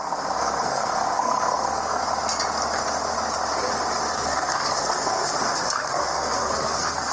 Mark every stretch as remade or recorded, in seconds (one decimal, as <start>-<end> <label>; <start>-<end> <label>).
0.0-2.0 remade; 2.0-4.1 recorded; 4.1-7.1 remade